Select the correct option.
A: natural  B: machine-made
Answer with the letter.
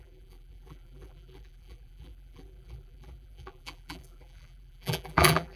B